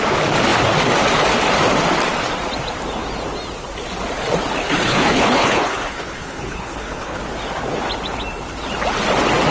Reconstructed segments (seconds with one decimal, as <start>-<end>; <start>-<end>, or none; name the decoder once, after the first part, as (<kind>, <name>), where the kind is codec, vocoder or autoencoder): 4.6-7.2 (codec, HILCodec)